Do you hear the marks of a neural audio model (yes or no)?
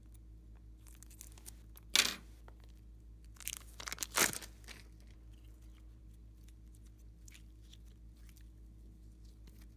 no